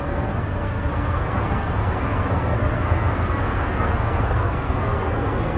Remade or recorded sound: remade